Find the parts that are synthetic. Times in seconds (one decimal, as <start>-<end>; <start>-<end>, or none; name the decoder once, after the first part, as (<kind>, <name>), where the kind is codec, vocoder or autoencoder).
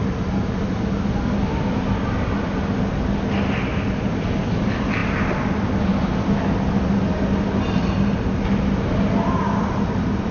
none